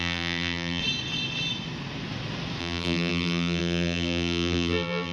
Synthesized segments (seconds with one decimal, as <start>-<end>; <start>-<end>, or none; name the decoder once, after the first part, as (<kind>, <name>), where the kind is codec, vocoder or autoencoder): 0.0-0.8 (vocoder, BigVGAN v2); 2.6-5.1